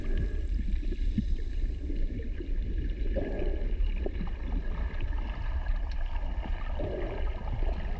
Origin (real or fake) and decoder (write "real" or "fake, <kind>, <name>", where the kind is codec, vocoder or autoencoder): real